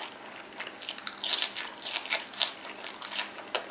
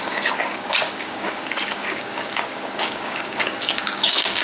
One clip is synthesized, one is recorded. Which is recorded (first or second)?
first